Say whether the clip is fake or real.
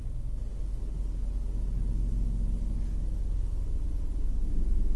real